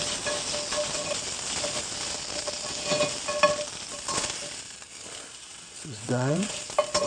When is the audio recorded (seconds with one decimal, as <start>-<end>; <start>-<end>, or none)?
0.0-5.5; 6.6-7.1